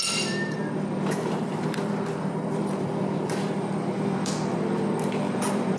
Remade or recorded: remade